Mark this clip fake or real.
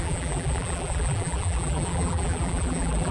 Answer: fake